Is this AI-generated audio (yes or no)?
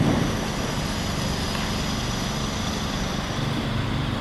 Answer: no